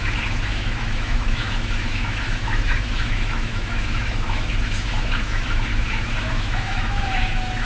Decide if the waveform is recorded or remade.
remade